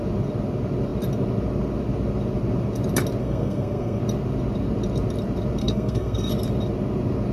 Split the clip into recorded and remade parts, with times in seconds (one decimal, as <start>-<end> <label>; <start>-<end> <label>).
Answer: 0.0-3.2 recorded; 3.2-4.0 remade; 4.0-5.6 recorded; 5.6-6.3 remade; 6.3-7.3 recorded